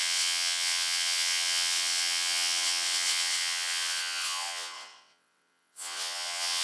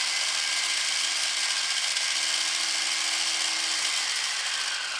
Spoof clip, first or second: first